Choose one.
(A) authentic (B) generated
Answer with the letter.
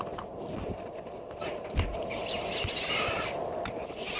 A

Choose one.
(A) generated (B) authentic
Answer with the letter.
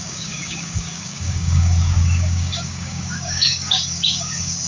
A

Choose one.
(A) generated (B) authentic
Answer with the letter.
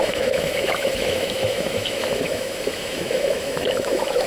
A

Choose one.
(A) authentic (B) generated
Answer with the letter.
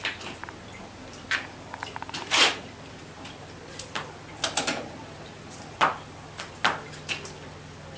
A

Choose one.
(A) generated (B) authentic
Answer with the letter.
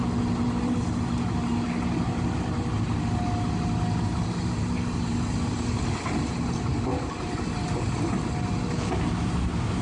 B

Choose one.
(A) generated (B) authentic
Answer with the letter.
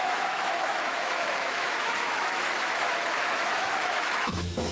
A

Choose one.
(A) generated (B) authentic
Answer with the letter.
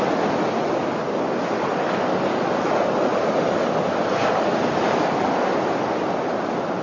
B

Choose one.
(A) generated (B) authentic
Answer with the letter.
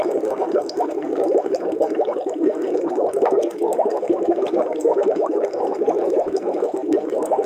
A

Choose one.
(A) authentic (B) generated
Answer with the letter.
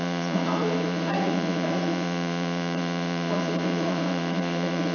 B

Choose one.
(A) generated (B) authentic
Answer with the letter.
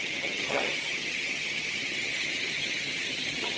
A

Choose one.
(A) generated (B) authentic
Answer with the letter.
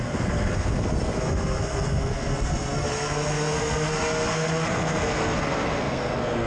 A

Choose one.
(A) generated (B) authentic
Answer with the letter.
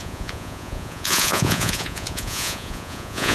A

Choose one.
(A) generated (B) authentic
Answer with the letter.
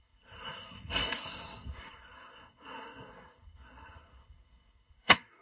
A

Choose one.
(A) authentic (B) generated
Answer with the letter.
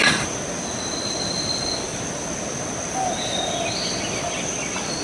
A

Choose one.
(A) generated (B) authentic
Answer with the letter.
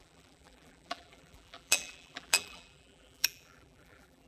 A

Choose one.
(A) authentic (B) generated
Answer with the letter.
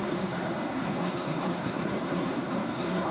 B